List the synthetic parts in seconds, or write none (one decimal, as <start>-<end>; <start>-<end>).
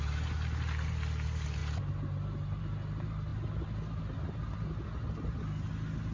none